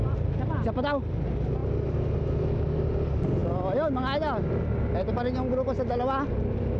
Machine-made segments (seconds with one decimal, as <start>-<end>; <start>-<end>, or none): none